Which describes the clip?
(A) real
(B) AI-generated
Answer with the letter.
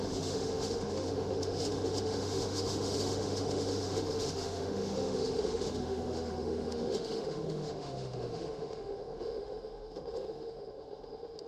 B